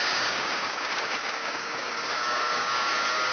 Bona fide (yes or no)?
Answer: no